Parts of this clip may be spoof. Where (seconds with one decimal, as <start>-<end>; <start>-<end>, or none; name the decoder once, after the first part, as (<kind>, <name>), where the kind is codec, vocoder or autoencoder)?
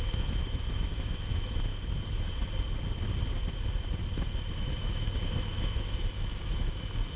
0.0-1.7 (autoencoder, DAC-VAE); 4.5-7.2